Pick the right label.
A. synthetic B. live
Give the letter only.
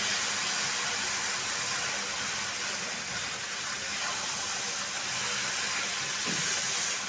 B